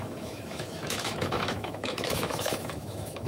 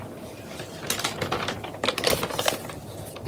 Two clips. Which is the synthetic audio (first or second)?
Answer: first